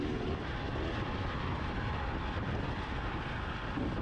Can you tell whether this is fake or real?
real